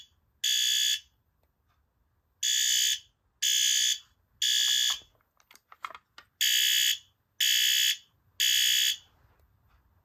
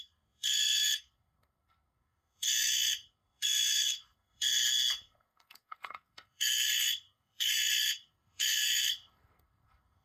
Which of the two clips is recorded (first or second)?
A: first